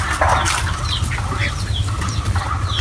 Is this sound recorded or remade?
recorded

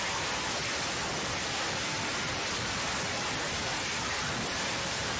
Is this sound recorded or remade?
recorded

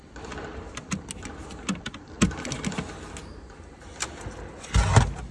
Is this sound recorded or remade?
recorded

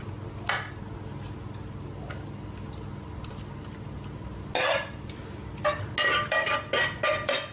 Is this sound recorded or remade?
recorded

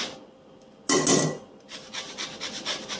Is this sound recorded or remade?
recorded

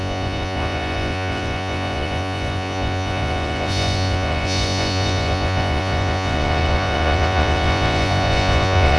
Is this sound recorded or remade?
remade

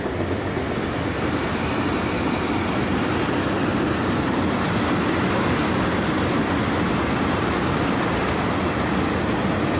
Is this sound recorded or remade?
recorded